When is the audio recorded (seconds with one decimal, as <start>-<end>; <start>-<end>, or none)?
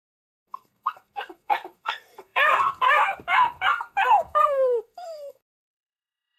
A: none